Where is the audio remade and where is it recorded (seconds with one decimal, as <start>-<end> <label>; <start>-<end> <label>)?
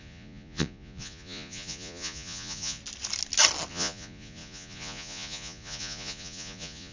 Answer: 0.0-2.8 remade; 2.8-3.7 recorded; 3.7-6.9 remade